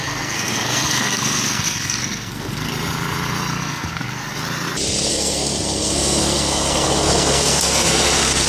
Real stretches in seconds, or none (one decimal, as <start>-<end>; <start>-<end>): 2.7-3.5; 4.2-5.1